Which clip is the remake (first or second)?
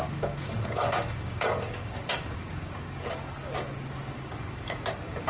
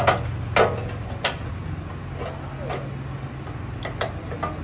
first